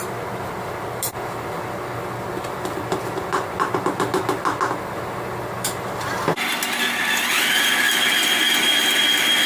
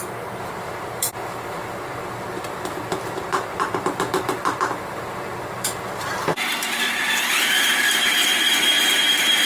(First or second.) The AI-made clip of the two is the second